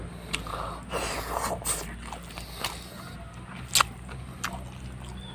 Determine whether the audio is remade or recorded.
recorded